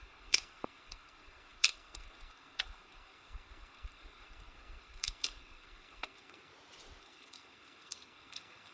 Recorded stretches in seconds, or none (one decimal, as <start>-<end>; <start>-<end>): 6.5-7.0

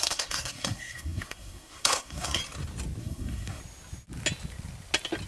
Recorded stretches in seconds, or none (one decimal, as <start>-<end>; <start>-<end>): 2.4-3.0; 3.6-5.3

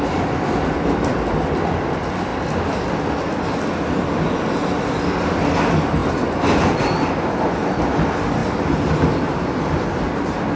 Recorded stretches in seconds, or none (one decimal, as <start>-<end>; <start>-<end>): 0.0-10.6

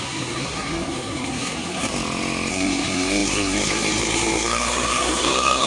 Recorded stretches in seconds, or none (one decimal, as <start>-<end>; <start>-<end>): 1.9-2.5

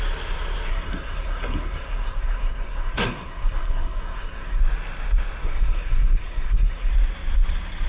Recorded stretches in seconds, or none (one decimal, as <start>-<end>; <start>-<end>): 0.0-0.7; 4.6-5.4; 6.9-7.9

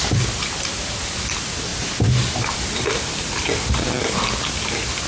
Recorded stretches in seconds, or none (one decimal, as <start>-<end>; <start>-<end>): 0.0-5.1

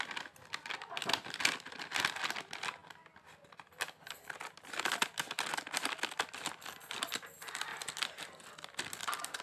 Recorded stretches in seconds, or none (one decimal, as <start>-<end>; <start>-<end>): 0.0-9.4

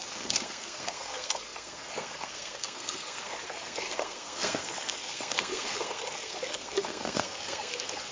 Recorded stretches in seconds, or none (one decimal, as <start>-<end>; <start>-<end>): none